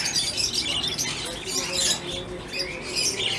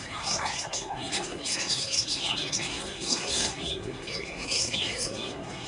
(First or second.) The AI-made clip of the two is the second